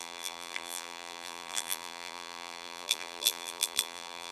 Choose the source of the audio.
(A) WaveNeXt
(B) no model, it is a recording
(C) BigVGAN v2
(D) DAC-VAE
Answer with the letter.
C